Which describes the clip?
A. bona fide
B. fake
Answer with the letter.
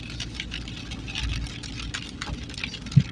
A